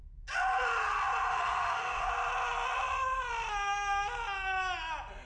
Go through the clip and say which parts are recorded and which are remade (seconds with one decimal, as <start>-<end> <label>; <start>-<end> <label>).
0.0-1.3 recorded; 1.3-2.1 remade; 2.1-5.3 recorded